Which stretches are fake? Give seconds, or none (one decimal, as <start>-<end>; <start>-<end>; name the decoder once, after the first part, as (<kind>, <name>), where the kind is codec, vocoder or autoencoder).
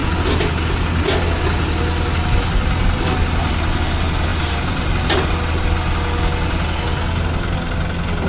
none